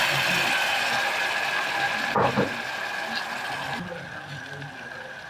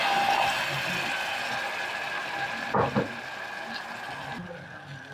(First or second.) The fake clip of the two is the first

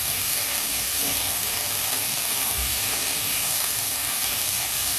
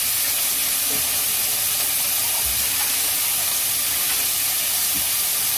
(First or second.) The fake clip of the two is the first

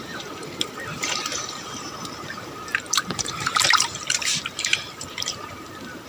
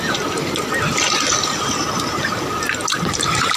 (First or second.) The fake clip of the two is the first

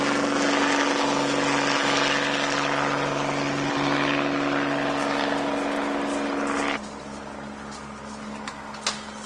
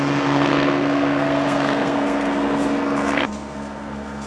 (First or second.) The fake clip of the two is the second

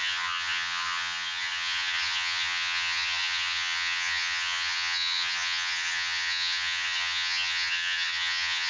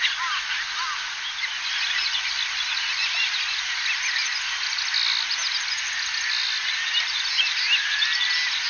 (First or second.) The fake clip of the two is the first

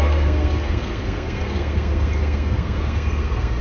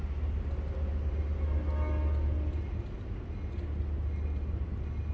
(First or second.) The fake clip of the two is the first